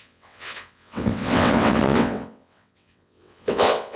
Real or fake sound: fake